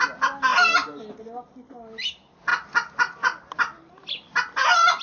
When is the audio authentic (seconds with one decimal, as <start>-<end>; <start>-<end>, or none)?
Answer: 0.0-5.0